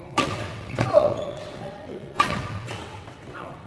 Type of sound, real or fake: fake